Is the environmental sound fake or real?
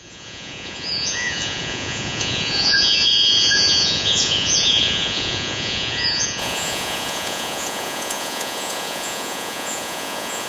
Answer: fake